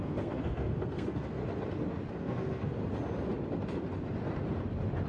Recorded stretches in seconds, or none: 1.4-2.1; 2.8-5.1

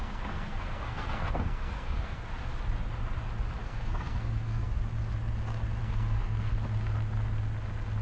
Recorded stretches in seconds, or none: 2.3-3.6; 4.7-5.8; 6.5-8.0

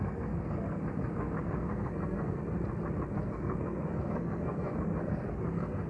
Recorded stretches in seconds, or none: 2.4-3.1

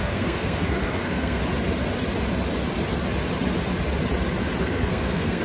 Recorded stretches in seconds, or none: 1.4-4.6

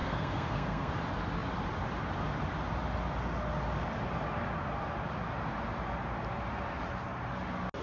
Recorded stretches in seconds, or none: 0.9-7.8

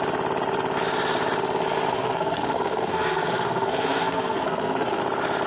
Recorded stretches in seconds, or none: 0.0-1.9; 5.0-5.5

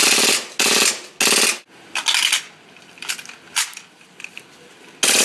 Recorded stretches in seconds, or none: 0.0-5.2